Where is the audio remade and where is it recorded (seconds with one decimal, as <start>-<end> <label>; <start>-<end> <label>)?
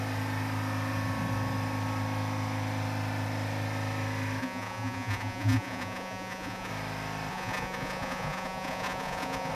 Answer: 0.0-4.4 recorded; 4.4-6.7 remade; 6.7-7.3 recorded; 7.3-9.5 remade